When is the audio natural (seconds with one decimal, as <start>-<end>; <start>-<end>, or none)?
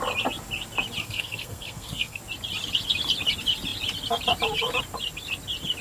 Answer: 0.0-1.0; 2.2-5.8